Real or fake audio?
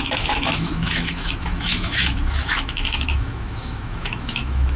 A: fake